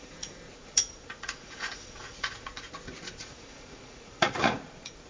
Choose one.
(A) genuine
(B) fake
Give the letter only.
B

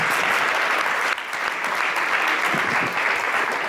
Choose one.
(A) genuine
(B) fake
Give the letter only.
A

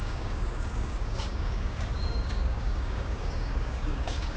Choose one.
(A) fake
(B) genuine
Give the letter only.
A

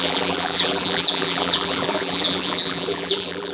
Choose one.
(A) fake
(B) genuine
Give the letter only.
A